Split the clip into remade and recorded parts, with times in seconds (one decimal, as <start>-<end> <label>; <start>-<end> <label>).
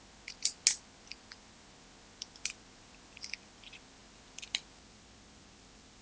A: 0.0-6.0 recorded